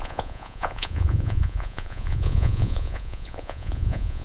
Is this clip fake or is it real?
fake